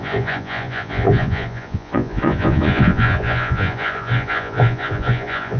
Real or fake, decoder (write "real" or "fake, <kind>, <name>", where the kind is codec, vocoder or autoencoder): fake, vocoder, Vocos